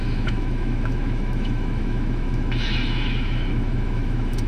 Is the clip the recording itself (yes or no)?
no